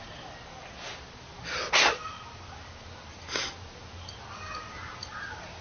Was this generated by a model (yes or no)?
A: no